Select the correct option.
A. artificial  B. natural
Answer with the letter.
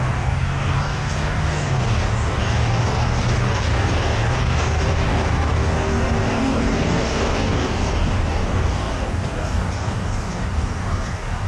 A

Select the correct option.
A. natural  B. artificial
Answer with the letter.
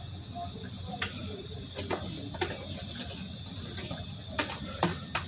A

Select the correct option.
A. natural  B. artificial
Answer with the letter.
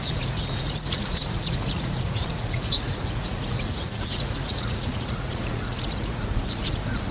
B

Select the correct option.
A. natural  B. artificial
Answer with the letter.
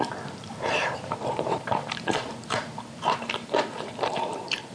B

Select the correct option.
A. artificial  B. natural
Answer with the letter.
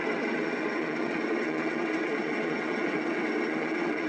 A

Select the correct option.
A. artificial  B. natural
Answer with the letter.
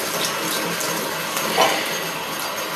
B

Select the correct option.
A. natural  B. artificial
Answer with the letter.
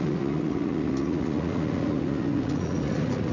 B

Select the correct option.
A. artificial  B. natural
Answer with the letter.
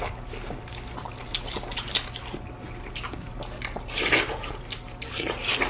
B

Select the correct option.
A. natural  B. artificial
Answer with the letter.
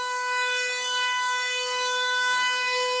B